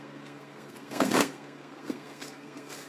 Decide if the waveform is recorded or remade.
remade